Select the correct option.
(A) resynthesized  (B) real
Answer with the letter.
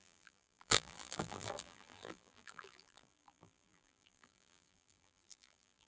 A